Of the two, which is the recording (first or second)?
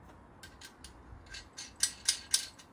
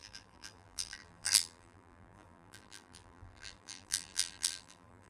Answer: first